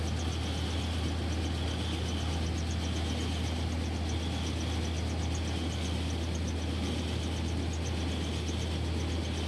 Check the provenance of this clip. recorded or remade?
recorded